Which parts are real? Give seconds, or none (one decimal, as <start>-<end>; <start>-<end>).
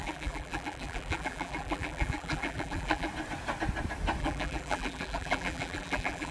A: 3.1-4.2